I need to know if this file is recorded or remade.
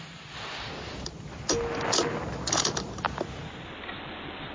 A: recorded